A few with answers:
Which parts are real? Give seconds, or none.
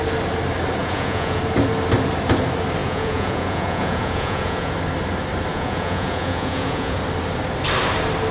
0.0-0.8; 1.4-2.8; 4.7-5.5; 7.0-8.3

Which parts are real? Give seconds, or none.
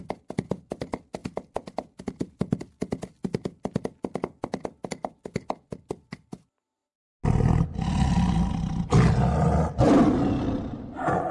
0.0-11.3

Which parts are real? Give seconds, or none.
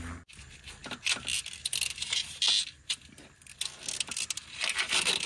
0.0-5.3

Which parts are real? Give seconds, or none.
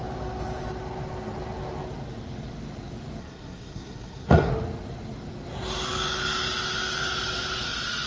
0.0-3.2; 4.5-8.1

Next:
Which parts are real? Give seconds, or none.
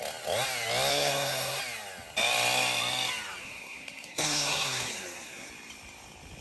0.0-0.9; 1.6-3.4; 5.5-6.4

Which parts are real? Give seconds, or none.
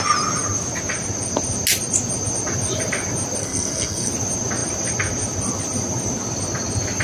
0.0-3.4; 4.1-7.0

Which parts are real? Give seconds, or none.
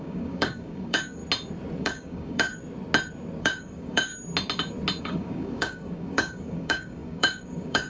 1.2-1.8; 2.5-3.4; 4.1-5.0